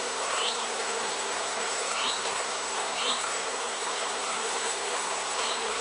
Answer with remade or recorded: remade